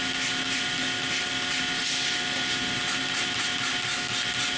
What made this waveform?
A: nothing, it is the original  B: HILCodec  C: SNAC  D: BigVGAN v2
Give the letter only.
A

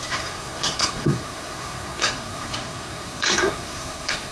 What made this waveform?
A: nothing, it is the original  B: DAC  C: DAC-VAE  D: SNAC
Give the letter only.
D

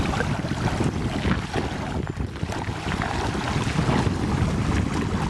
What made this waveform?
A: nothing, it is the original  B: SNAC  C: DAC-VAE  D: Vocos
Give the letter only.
A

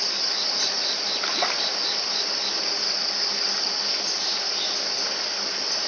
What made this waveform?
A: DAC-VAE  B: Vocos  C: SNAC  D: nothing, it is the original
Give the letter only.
D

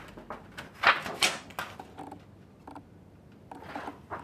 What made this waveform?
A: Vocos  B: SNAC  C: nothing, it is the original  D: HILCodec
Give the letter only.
C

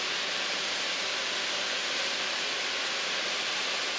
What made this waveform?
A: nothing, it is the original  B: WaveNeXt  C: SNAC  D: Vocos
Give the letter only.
A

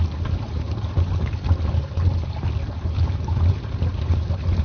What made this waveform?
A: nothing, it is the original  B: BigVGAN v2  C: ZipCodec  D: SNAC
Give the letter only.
A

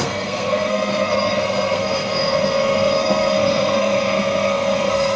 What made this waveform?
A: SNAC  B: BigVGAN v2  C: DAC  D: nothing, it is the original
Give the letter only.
A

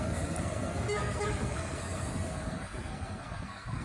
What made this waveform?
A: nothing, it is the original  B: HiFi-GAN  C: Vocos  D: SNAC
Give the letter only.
D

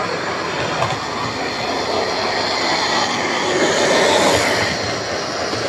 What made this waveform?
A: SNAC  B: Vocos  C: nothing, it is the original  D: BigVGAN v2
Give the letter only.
C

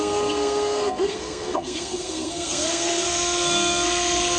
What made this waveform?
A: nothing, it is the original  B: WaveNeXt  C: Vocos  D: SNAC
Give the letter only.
D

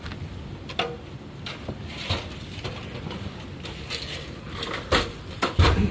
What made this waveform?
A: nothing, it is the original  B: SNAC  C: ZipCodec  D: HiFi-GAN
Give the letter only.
A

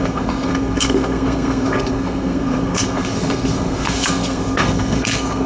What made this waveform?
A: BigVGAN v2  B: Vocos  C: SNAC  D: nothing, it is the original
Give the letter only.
C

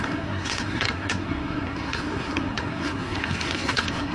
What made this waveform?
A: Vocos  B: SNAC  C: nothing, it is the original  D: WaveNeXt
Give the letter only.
B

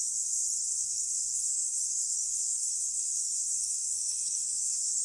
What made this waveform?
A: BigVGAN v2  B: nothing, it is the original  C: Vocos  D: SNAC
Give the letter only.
D